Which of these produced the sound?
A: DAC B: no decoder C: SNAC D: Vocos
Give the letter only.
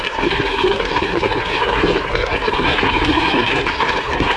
C